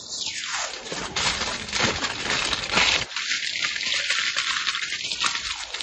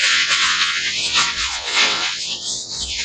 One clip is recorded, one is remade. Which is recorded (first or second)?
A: first